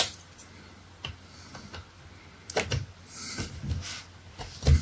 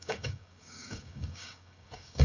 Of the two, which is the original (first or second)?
first